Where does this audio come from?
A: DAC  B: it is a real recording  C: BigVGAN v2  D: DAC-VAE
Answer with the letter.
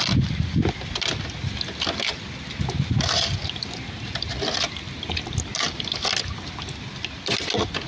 B